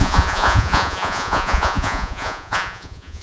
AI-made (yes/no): yes